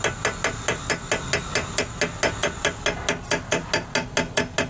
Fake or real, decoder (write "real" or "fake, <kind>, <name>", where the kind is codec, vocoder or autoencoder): real